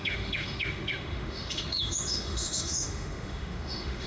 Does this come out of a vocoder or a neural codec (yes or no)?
yes